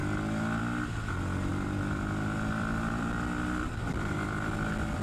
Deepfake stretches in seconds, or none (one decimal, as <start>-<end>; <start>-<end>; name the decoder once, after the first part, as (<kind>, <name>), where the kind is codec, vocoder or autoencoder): 1.5-4.5 (vocoder, BigVGAN v2)